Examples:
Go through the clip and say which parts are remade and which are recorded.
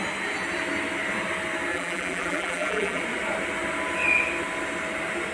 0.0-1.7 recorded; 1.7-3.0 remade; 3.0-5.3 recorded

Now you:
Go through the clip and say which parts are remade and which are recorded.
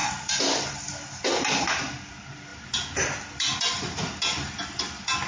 0.0-5.3 recorded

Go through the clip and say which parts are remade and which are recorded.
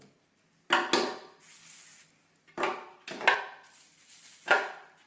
0.0-5.1 recorded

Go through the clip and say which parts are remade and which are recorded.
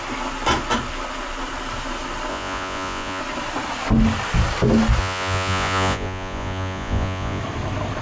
0.0-2.3 recorded; 2.3-3.2 remade; 3.2-5.0 recorded; 5.0-7.4 remade; 7.4-8.0 recorded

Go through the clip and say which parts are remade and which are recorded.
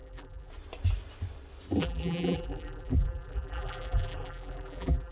0.0-0.5 remade; 0.5-1.8 recorded; 1.8-5.1 remade